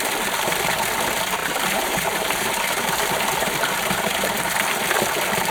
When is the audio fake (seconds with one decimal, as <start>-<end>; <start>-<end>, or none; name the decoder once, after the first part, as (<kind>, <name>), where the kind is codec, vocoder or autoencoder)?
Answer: 1.4-4.3 (vocoder, BigVGAN v2)